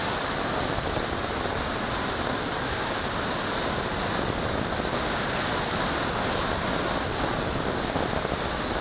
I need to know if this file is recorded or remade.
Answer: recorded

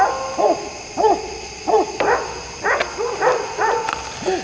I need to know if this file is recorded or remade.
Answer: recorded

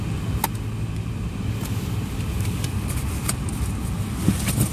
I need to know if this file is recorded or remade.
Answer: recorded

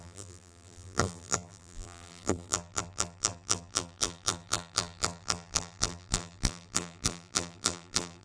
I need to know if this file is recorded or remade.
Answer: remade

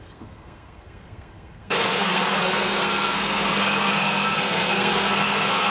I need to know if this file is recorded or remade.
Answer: remade